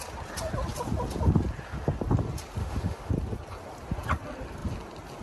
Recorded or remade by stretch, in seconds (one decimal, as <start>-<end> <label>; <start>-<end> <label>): 0.0-2.6 recorded; 2.6-3.1 remade; 3.1-5.2 recorded